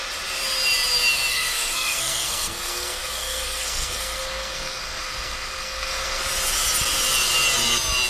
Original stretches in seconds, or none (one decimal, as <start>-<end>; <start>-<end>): 0.0-1.3; 6.2-8.1